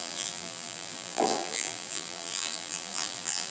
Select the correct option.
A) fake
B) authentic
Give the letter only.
A